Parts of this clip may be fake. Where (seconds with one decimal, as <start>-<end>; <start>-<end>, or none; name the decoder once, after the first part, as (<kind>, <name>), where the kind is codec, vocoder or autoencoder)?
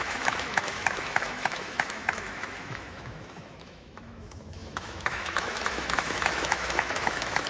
0.0-7.5 (autoencoder, DAC-VAE)